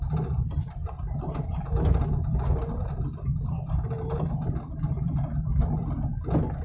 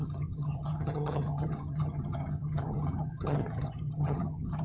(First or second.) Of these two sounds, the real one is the first